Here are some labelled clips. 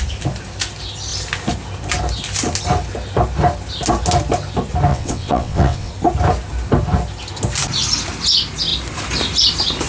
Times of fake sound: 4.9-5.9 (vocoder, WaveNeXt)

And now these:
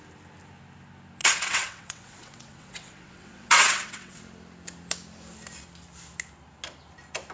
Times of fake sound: 1.2-4.2 (vocoder, WaveNeXt)

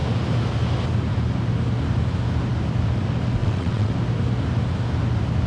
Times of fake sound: 3.4-3.9 (vocoder, WaveNeXt)

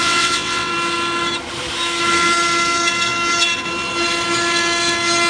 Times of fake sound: 0.0-0.7 (vocoder, WaveNeXt)

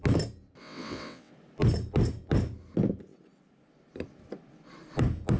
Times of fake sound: 0.6-1.3 (vocoder, WaveNeXt)

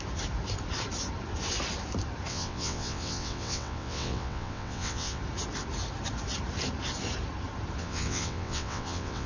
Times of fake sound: 2.3-5.2 (vocoder, WaveNeXt); 7.8-9.3

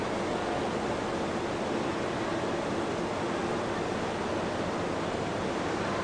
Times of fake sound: none